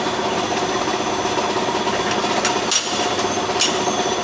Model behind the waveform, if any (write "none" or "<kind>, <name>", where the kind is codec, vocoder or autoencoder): none